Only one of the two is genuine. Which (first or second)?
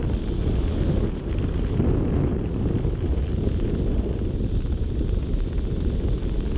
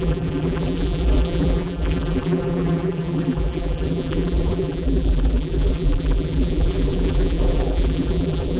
first